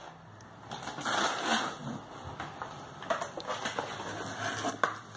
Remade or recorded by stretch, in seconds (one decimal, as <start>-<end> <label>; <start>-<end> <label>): 0.0-5.2 recorded